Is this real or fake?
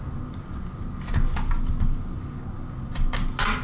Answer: real